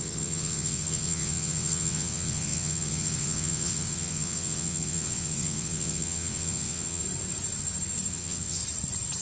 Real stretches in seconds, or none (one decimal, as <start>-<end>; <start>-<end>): 7.0-8.1; 8.6-9.2